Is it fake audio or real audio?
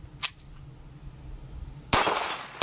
real